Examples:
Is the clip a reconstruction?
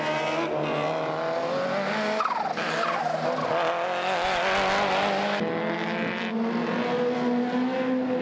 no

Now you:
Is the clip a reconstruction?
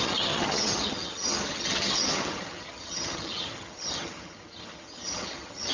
yes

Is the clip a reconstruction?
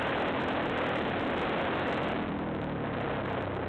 no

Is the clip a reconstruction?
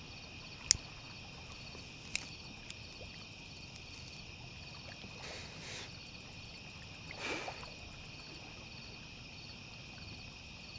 no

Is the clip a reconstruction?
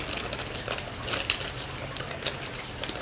no